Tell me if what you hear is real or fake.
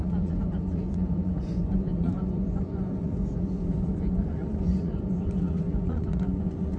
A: fake